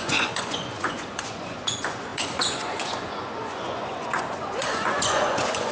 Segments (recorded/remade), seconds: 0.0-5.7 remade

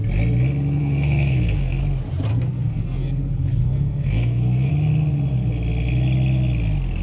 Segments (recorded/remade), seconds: 0.0-0.8 recorded; 0.8-1.8 remade; 1.8-2.3 recorded; 2.3-4.7 remade; 4.7-7.0 recorded

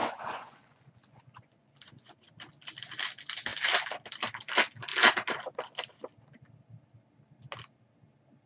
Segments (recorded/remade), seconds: 0.0-2.3 remade; 2.3-8.5 recorded

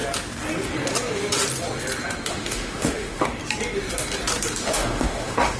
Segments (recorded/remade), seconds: 0.0-2.3 recorded; 2.3-3.4 remade; 3.4-4.6 recorded; 4.6-5.6 remade

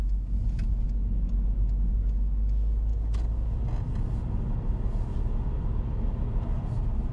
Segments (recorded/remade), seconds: 0.0-7.1 recorded

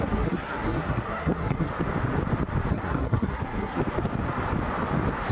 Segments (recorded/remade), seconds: 0.0-1.7 remade; 1.7-2.7 recorded; 2.7-3.8 remade; 3.8-5.3 recorded

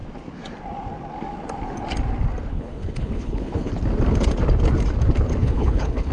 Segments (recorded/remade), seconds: 0.0-2.5 recorded; 2.5-3.7 remade; 3.7-5.4 recorded; 5.4-6.1 remade